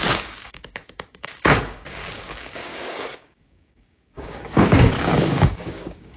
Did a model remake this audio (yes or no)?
yes